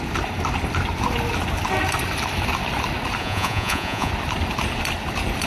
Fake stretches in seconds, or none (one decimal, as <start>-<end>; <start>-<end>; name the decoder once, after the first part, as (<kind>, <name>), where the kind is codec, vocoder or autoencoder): 3.2-4.1 (vocoder, Vocos)